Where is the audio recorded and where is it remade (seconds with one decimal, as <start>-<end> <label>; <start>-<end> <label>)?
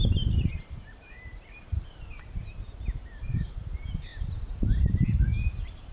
0.0-4.1 remade; 4.1-4.8 recorded; 4.8-5.9 remade